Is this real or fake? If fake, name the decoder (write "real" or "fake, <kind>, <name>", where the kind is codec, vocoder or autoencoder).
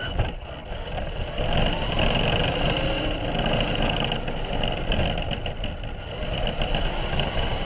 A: real